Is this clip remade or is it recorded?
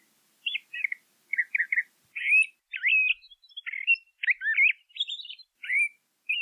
recorded